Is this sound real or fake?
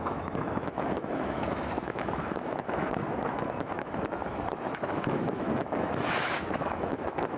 fake